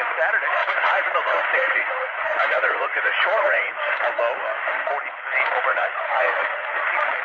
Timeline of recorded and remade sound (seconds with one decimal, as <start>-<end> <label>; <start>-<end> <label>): 0.0-0.6 recorded; 0.6-3.8 remade; 3.8-5.7 recorded; 5.7-6.7 remade; 6.7-7.2 recorded

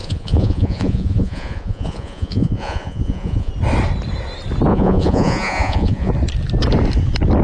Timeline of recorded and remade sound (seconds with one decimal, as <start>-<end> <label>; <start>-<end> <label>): 0.0-3.5 remade; 3.5-4.7 recorded; 4.7-6.1 remade; 6.1-7.4 recorded

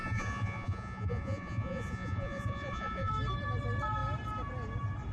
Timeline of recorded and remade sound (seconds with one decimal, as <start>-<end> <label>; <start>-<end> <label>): 0.0-3.1 remade; 3.1-5.1 recorded

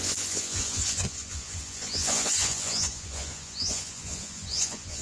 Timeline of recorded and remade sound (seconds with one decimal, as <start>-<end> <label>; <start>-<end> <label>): 0.0-5.0 remade

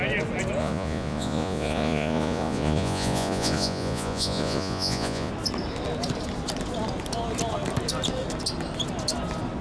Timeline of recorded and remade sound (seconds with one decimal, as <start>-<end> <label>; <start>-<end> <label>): 0.0-0.6 recorded; 0.6-5.3 remade; 5.3-9.6 recorded

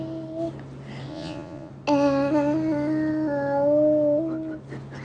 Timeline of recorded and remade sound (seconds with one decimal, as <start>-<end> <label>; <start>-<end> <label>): 0.0-1.1 recorded; 1.1-1.7 remade; 1.7-5.0 recorded

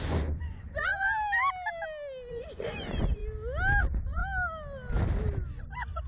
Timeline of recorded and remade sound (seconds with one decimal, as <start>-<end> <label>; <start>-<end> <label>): 0.0-0.9 remade; 0.9-2.3 recorded; 2.3-3.2 remade; 3.2-3.8 recorded; 3.8-4.2 remade; 4.2-5.5 recorded; 5.5-6.1 remade

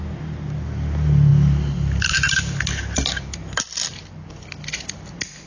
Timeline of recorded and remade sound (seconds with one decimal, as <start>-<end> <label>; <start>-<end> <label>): 0.0-5.5 recorded